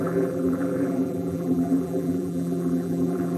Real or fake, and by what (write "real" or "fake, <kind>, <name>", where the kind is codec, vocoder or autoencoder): fake, vocoder, BigVGAN v2